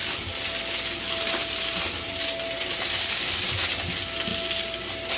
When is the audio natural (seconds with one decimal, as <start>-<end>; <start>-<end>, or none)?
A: 0.0-1.4; 2.1-5.2